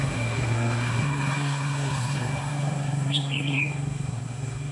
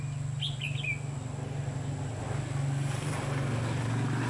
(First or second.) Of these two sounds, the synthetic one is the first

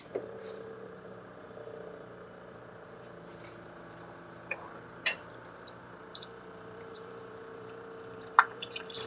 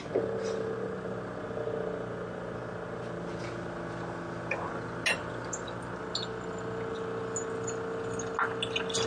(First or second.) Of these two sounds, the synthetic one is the first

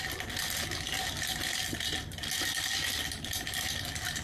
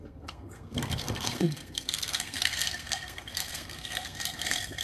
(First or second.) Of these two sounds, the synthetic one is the second